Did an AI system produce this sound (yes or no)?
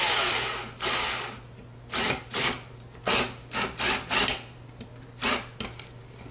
no